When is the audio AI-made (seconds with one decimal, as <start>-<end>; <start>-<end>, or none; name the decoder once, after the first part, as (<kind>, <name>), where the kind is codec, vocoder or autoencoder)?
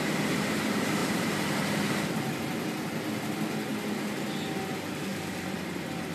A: 1.0-1.9 (vocoder, BigVGAN v2); 5.1-6.1